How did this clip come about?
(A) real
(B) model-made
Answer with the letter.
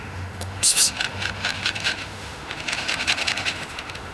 B